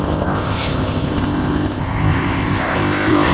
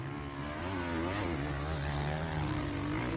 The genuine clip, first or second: second